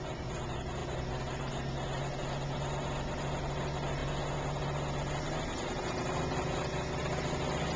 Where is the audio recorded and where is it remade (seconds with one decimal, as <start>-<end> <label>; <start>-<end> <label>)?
0.0-7.8 recorded